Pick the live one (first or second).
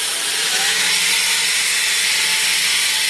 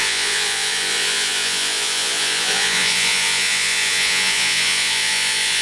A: first